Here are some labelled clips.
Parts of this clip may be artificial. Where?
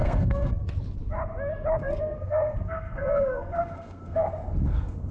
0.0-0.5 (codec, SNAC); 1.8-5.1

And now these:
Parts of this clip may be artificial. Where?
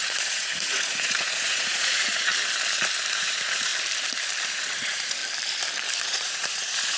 0.0-2.3 (vocoder, Vocos); 3.1-3.7; 4.5-5.2; 6.0-7.0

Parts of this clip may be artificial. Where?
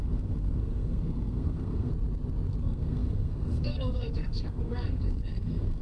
0.0-1.9 (codec, SNAC); 2.6-5.8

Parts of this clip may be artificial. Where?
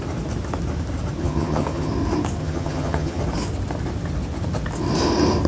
1.2-1.9 (vocoder, HiFi-GAN); 2.4-3.2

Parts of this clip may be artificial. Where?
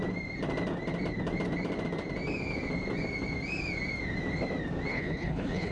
4.9-5.7 (codec, HILCodec)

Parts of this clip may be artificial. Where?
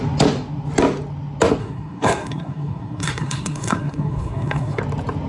1.6-4.8 (codec, SNAC)